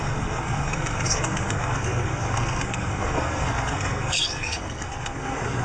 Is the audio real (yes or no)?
no